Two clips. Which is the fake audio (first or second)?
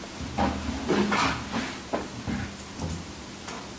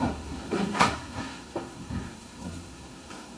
second